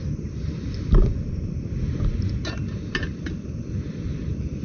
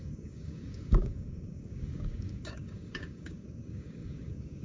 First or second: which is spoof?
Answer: second